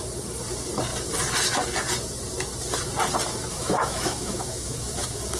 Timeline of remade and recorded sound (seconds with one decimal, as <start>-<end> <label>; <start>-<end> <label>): 0.0-3.5 recorded; 3.5-5.4 remade